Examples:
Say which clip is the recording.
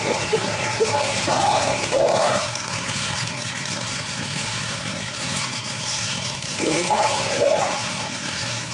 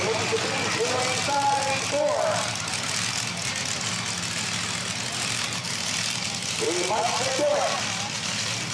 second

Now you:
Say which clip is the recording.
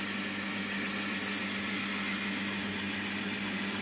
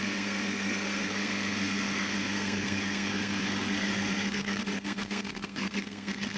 first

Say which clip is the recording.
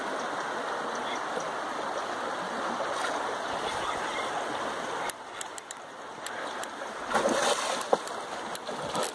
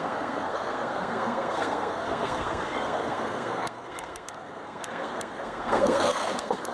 first